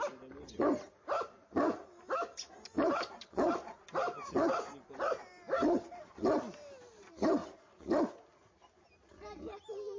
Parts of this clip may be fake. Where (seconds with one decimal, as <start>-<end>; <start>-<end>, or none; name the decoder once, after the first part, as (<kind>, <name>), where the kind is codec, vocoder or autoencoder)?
none